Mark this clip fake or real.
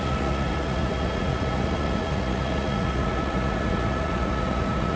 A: fake